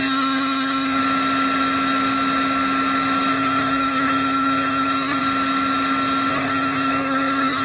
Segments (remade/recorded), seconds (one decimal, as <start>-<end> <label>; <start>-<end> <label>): 0.0-1.0 remade; 1.0-3.3 recorded; 3.3-5.2 remade; 5.2-6.3 recorded; 6.3-7.6 remade